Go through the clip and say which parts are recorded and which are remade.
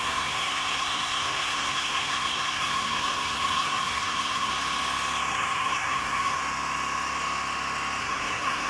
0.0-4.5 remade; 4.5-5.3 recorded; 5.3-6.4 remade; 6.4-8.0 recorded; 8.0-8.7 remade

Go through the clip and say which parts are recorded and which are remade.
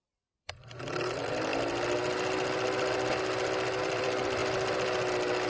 0.0-1.5 remade; 1.5-3.8 recorded; 3.8-4.4 remade; 4.4-5.5 recorded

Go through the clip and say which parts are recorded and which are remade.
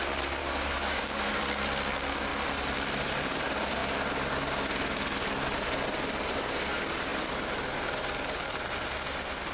0.0-0.4 recorded; 0.4-1.3 remade; 1.3-9.5 recorded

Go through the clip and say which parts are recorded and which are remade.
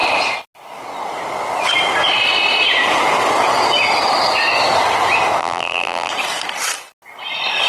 0.0-5.4 recorded; 5.4-6.1 remade; 6.1-7.7 recorded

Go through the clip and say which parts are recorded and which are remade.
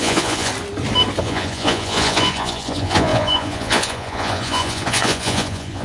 0.0-0.5 remade; 0.5-1.2 recorded; 1.2-5.8 remade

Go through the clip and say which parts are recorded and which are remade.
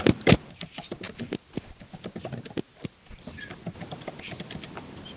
0.0-5.2 recorded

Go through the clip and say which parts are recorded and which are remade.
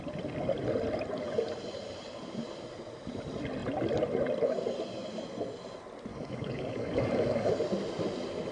0.0-6.1 recorded; 6.1-7.5 remade; 7.5-8.5 recorded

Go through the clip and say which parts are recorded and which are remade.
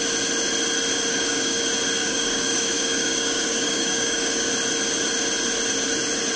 0.0-1.1 recorded; 1.1-1.6 remade; 1.6-2.0 recorded; 2.0-4.5 remade; 4.5-6.4 recorded